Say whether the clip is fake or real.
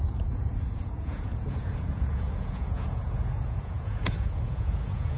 fake